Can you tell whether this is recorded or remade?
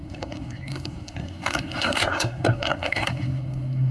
remade